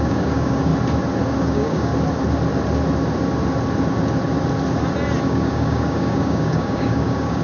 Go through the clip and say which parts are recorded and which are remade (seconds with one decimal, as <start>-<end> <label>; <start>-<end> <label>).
0.0-0.7 remade; 0.7-1.4 recorded; 1.4-1.9 remade; 1.9-5.2 recorded; 5.2-7.4 remade